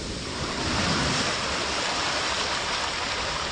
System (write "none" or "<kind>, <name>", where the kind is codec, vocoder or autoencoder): vocoder, BigVGAN v2